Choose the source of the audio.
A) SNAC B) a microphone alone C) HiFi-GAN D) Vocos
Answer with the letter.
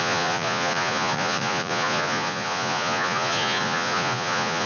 D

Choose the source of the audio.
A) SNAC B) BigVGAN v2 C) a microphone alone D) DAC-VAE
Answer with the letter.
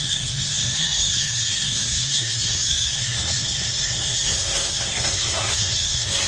A